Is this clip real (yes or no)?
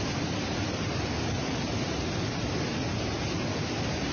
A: yes